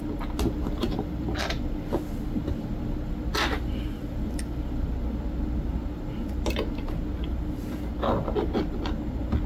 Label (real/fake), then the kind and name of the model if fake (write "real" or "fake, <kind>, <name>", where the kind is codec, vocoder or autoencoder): real